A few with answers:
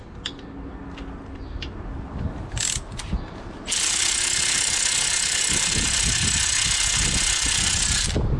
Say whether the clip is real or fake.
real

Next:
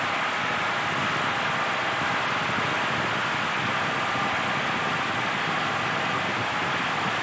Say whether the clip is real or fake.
real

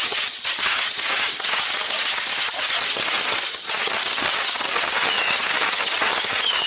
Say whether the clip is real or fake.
fake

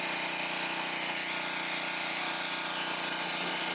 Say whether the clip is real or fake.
real